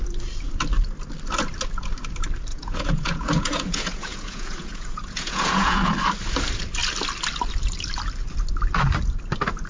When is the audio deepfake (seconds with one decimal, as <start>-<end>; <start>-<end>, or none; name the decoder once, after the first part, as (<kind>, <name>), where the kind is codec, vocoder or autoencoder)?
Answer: 2.5-5.9 (vocoder, Vocos)